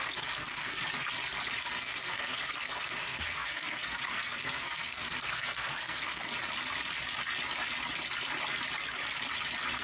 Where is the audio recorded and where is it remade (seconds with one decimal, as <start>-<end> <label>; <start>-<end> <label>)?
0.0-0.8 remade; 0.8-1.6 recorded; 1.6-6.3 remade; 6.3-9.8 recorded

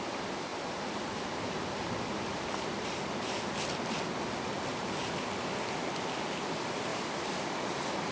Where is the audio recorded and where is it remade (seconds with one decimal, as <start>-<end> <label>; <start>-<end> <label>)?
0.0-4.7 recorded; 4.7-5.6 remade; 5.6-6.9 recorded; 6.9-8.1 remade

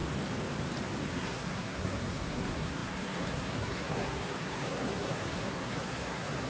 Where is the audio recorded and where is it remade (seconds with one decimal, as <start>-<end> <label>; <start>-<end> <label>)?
0.0-1.1 recorded; 1.1-6.5 remade

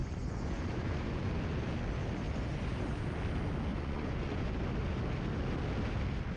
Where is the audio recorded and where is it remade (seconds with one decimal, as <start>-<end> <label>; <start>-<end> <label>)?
0.0-1.3 remade; 1.3-3.7 recorded; 3.7-4.6 remade; 4.6-6.4 recorded

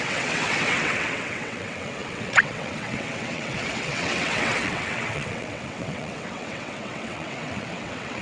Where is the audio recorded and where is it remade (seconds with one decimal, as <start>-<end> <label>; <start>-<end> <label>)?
0.0-8.2 remade

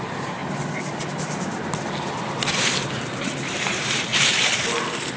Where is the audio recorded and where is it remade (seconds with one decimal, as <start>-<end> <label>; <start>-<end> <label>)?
0.0-0.4 remade; 0.4-2.5 recorded; 2.5-4.1 remade; 4.1-5.2 recorded